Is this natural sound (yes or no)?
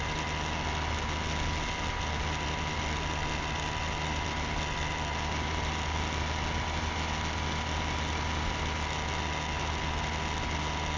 yes